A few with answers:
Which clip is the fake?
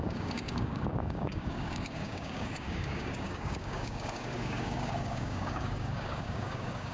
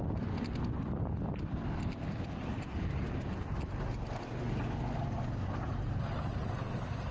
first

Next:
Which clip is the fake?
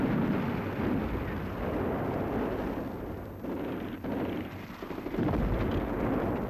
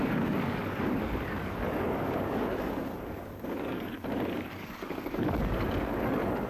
second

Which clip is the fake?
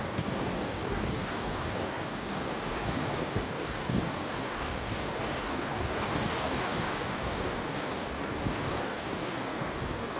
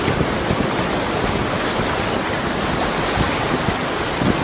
first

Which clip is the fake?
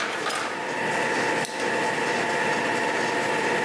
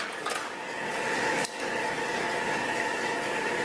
second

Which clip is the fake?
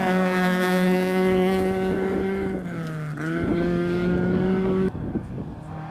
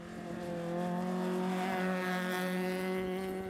first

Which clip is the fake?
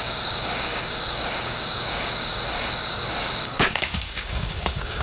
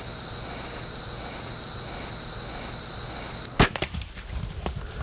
first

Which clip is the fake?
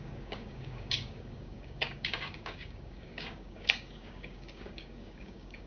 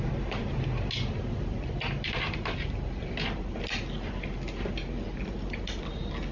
first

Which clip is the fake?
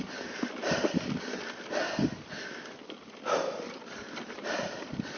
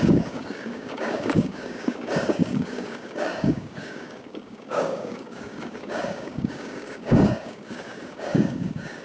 second